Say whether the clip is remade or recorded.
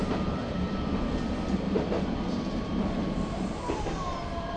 remade